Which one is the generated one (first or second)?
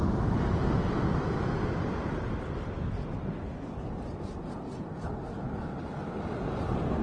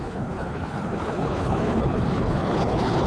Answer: second